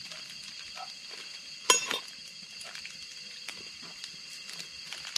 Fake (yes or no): no